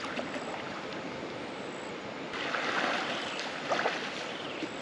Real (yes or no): yes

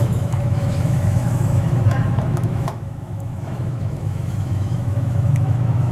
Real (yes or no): no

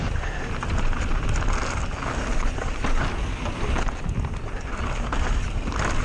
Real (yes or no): yes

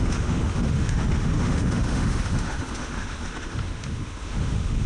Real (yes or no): no